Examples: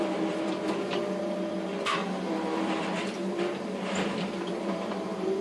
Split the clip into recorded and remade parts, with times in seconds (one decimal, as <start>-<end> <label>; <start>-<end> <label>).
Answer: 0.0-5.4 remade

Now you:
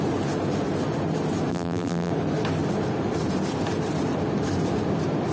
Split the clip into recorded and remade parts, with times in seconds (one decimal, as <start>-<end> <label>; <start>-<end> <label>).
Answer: 0.0-1.5 recorded; 1.5-2.1 remade; 2.1-5.3 recorded

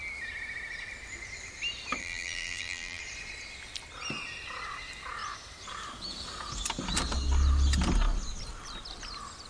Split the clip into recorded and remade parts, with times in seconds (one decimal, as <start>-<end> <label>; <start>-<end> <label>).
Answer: 0.0-2.0 recorded; 2.0-3.0 remade; 3.0-9.5 recorded